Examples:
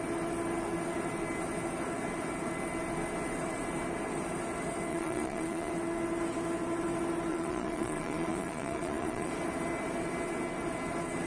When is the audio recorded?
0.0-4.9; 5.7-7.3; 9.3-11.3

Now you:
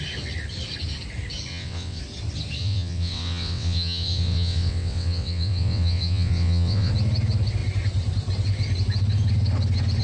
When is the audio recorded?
0.0-1.5; 2.0-2.6; 6.9-10.0